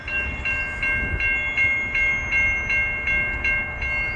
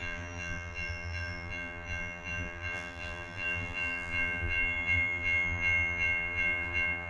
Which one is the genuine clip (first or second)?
first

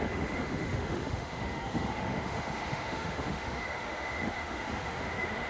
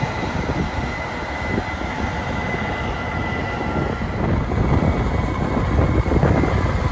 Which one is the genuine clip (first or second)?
second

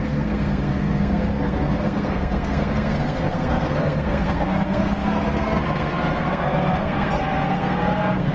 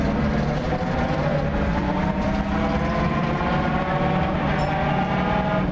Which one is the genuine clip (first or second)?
second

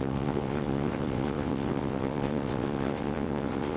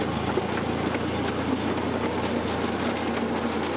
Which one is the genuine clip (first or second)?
second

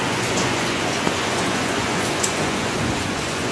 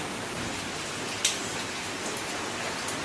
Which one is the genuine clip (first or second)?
second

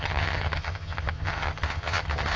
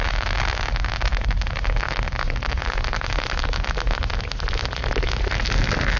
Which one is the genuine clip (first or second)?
second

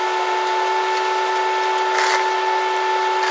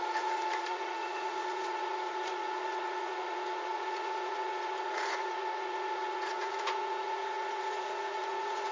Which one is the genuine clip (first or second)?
first